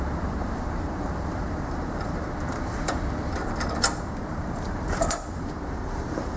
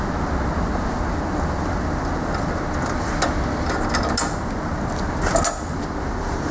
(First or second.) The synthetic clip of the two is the first